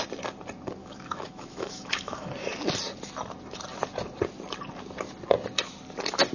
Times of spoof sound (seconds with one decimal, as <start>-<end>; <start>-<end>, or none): 0.8-2.3